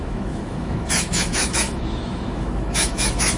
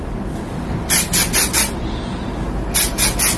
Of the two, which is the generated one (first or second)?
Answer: first